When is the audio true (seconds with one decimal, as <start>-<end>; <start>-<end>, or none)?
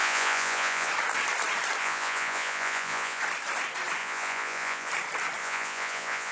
0.9-1.8; 3.2-4.0; 4.9-5.4